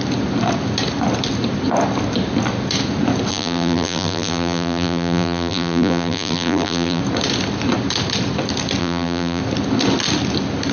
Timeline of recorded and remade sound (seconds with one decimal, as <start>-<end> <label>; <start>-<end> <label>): 0.0-3.3 recorded; 3.3-7.0 remade; 7.0-8.8 recorded; 8.8-9.4 remade; 9.4-10.7 recorded